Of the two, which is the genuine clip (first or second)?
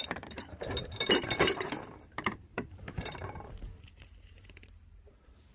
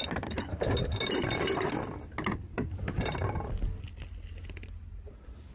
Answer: second